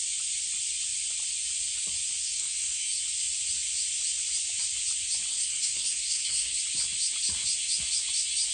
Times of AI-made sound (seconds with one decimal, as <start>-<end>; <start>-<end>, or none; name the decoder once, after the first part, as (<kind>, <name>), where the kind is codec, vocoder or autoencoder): 2.2-3.0 (codec, SNAC); 5.3-6.6